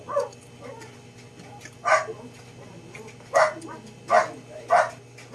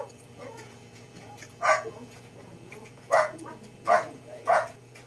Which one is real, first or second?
first